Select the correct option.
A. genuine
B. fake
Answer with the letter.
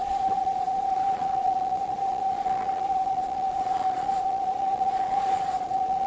B